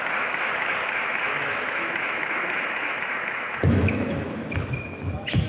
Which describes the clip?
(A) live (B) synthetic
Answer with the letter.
B